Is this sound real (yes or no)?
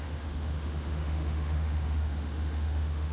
no